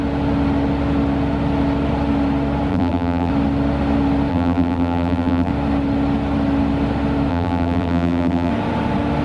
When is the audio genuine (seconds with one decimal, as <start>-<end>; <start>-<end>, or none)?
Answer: 0.0-2.7; 3.3-4.3; 5.5-7.3; 8.5-9.2